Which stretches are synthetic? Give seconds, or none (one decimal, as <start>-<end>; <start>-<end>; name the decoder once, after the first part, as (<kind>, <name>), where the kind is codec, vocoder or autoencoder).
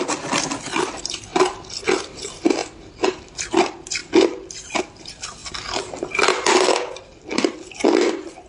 0.0-1.3 (vocoder, BigVGAN v2); 2.0-2.6; 3.2-5.4; 7.6-8.5